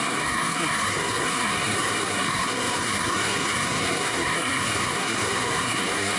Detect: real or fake fake